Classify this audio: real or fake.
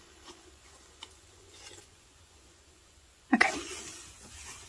fake